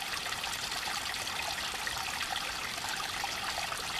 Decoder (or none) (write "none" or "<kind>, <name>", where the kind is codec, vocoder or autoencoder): none